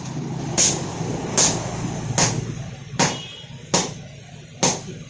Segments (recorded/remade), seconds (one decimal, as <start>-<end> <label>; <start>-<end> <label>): 0.0-5.1 recorded